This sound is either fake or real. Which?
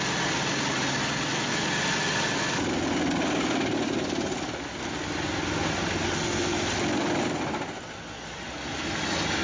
real